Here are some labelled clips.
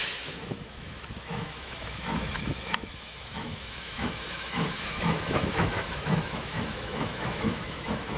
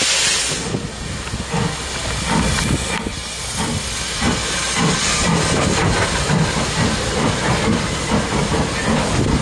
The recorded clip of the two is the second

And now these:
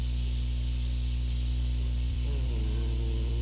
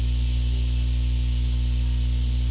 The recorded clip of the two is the second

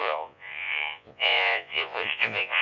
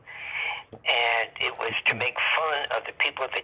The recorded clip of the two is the second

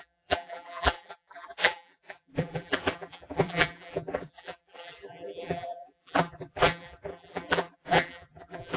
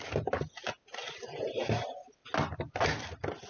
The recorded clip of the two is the second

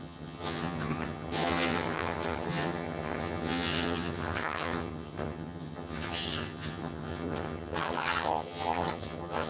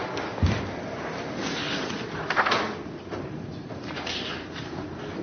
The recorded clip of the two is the second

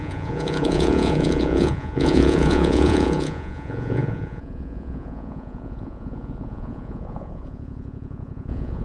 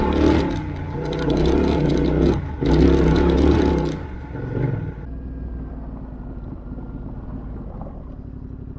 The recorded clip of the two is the second